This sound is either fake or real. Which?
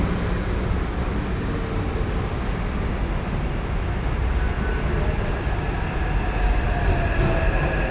real